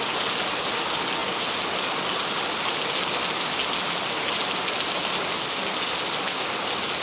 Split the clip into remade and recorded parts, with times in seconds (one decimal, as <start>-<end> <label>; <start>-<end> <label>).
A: 0.0-7.0 recorded